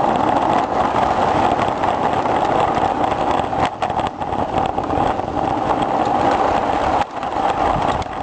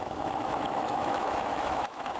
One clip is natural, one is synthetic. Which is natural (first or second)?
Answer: first